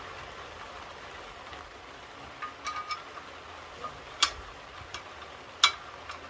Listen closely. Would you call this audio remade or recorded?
recorded